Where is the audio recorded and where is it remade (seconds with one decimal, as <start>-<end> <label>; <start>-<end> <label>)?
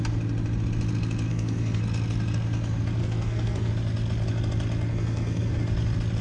0.0-1.3 recorded; 1.3-1.8 remade; 1.8-3.0 recorded; 3.0-3.7 remade; 3.7-4.9 recorded; 4.9-5.6 remade; 5.6-6.2 recorded